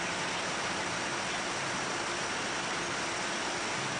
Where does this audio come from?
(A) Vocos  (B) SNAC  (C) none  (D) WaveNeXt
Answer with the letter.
C